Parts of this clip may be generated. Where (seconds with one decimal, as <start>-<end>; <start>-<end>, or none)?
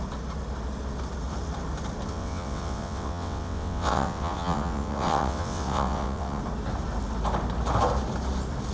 2.1-6.4